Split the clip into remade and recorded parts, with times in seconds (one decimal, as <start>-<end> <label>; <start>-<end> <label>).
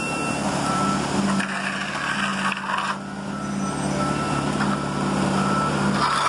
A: 0.0-6.3 recorded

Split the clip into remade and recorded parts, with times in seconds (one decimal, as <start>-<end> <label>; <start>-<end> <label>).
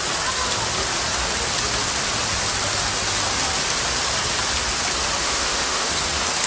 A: 0.0-5.2 recorded; 5.2-5.9 remade; 5.9-6.5 recorded